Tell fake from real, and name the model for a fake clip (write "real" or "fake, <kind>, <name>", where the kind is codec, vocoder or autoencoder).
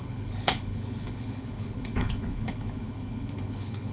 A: fake, codec, HILCodec